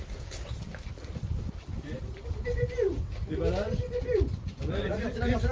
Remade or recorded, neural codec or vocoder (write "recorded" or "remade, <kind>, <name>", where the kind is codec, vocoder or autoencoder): remade, vocoder, BigVGAN v2